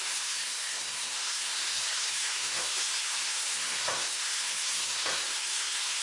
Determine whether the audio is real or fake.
fake